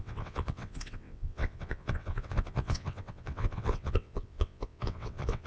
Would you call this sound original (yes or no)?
no